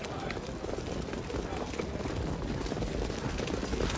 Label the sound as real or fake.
real